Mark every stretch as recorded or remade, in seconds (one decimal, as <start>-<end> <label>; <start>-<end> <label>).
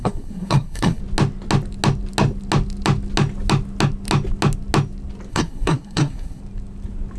0.0-1.0 remade; 1.0-5.3 recorded; 5.3-6.4 remade; 6.4-7.2 recorded